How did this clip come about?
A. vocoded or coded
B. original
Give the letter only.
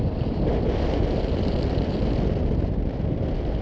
B